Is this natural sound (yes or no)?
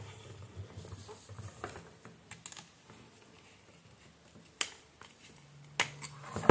yes